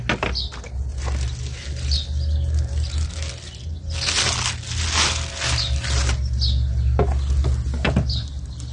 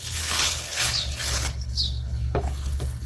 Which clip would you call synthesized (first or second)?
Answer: second